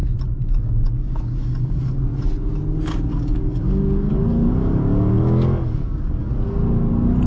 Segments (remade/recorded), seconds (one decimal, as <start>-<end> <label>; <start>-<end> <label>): 0.0-1.4 recorded; 1.4-1.9 remade; 1.9-3.1 recorded; 3.1-6.3 remade; 6.3-7.3 recorded

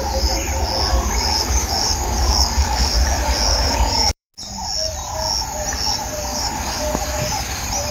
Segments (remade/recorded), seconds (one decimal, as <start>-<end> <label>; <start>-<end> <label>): 0.0-0.9 recorded; 0.9-2.9 remade; 2.9-3.5 recorded; 3.5-4.3 remade; 4.3-6.3 recorded; 6.3-7.2 remade; 7.2-7.9 recorded

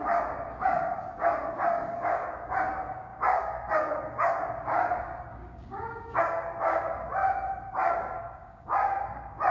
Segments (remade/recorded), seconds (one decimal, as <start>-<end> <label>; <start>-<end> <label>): 0.0-7.2 remade; 7.2-7.7 recorded; 7.7-9.5 remade

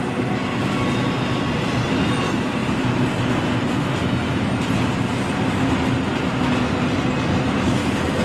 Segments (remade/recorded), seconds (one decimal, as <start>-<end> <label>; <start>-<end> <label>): 0.0-8.2 recorded

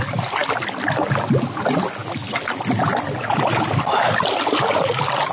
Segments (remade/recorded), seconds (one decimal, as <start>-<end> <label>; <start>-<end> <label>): 0.0-5.3 recorded

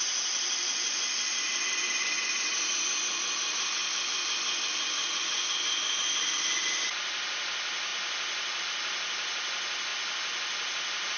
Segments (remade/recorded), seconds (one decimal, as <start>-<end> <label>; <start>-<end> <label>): 0.0-11.2 recorded

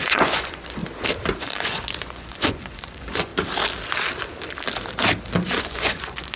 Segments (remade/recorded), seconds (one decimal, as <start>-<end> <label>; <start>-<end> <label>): 0.0-0.8 remade; 0.8-1.4 recorded; 1.4-3.3 remade; 3.3-5.6 recorded; 5.6-6.4 remade